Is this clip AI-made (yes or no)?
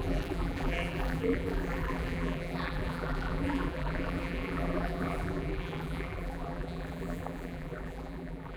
yes